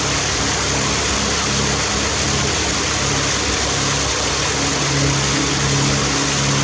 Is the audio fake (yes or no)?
no